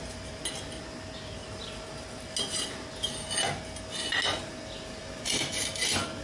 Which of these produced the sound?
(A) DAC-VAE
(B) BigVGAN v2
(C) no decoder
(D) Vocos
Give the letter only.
C